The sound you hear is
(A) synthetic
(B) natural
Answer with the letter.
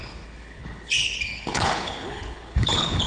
A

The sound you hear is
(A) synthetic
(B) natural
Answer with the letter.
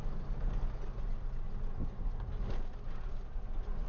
B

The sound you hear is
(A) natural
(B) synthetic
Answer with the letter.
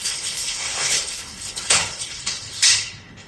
B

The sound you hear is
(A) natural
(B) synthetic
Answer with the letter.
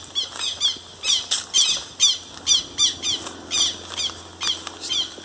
A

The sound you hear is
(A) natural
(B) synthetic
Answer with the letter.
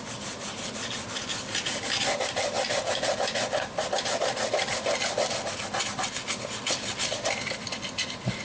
A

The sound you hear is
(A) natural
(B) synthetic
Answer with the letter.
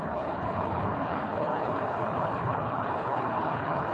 B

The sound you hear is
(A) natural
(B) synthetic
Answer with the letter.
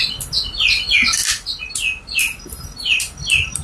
A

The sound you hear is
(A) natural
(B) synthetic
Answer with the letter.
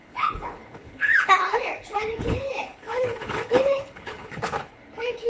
B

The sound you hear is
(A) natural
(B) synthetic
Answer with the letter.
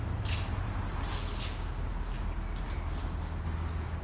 A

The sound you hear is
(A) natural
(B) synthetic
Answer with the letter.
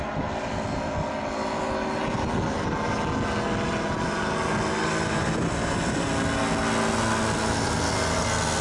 A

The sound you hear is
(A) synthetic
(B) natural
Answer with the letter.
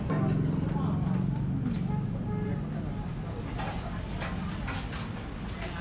B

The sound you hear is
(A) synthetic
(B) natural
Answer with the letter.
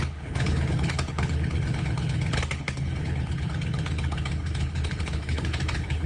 A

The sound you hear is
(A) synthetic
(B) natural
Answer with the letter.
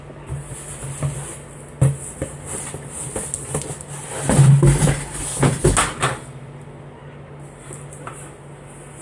B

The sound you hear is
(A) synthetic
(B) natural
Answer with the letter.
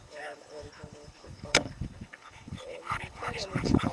A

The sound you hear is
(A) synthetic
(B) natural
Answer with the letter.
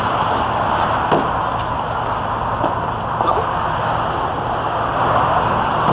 B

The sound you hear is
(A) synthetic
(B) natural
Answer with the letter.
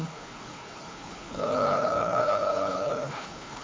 A